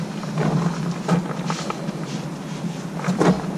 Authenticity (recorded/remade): recorded